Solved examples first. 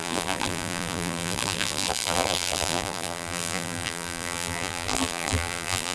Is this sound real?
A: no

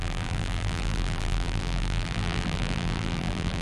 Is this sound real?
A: no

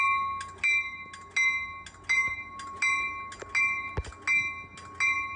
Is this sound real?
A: yes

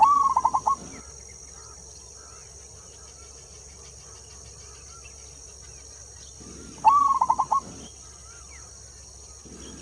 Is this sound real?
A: yes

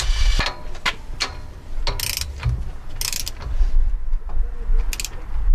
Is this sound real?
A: yes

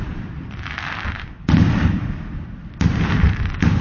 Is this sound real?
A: no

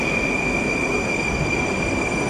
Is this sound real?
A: yes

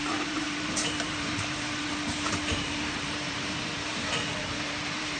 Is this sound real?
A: no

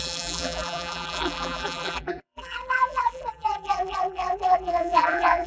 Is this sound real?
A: no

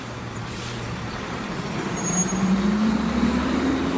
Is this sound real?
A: no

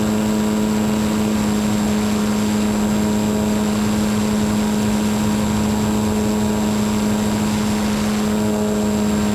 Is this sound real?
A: yes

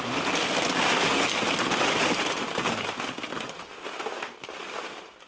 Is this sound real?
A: yes